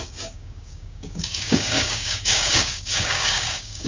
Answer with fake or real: fake